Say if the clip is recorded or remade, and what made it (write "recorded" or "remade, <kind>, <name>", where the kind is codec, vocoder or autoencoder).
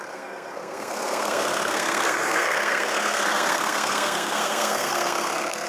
remade, codec, SNAC